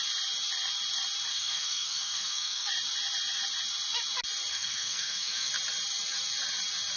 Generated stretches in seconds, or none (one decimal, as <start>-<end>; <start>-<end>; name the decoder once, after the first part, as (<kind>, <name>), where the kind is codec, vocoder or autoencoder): 1.3-2.7 (codec, SNAC); 4.5-5.5